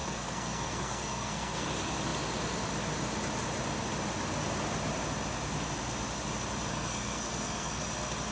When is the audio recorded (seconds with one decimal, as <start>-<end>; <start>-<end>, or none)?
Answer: 1.7-6.7; 7.8-8.3